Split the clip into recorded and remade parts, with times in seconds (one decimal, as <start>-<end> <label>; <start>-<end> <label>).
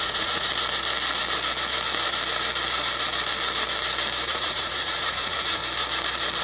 0.0-0.5 remade; 0.5-4.3 recorded; 4.3-5.6 remade; 5.6-6.4 recorded